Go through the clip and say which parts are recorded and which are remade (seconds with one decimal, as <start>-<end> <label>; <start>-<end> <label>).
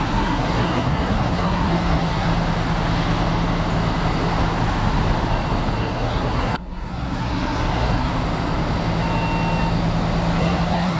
0.0-2.3 remade; 2.3-5.8 recorded; 5.8-8.1 remade; 8.1-10.4 recorded; 10.4-11.0 remade